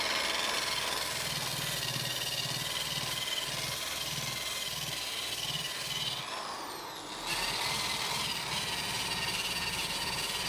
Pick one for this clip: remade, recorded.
recorded